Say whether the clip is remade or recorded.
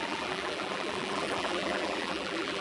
remade